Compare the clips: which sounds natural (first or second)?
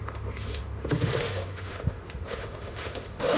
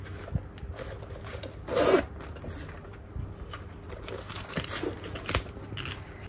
second